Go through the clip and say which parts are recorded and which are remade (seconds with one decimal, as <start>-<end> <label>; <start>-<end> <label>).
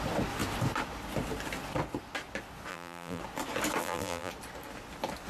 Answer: 0.0-2.7 recorded; 2.7-3.2 remade; 3.2-3.8 recorded; 3.8-4.3 remade; 4.3-5.3 recorded